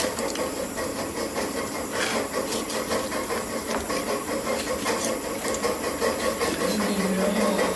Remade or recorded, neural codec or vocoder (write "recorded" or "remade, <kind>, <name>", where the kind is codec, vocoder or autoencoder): recorded